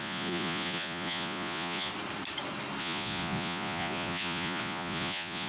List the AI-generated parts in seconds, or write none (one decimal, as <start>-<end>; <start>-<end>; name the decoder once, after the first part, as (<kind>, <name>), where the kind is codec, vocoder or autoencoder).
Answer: 0.0-1.9 (vocoder, Vocos); 2.8-5.5

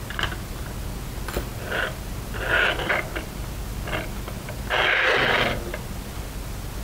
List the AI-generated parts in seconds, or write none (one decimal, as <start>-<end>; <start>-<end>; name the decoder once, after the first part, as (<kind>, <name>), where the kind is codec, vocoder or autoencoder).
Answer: none

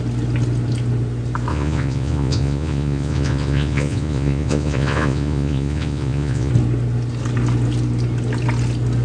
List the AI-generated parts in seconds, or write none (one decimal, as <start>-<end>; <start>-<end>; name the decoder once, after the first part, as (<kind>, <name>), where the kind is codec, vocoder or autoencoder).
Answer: 1.5-6.5 (vocoder, Vocos)